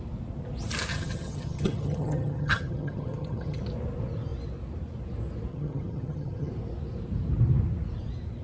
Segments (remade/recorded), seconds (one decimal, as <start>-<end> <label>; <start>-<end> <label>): 0.0-0.9 recorded; 0.9-3.6 remade; 3.6-5.5 recorded; 5.5-6.5 remade; 6.5-8.4 recorded